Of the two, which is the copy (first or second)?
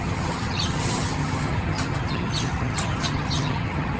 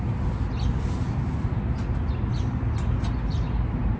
first